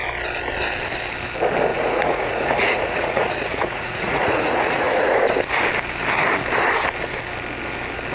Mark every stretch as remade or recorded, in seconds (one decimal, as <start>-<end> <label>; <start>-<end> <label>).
0.0-1.7 recorded; 1.7-5.2 remade; 5.2-8.1 recorded